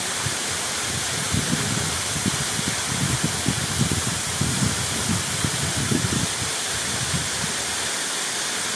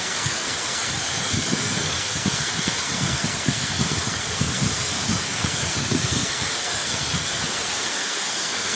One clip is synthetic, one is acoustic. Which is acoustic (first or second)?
first